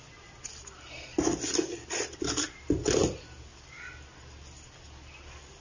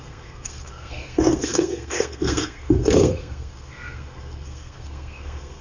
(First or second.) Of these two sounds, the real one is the first